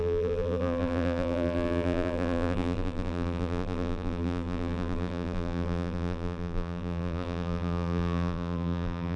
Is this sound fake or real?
fake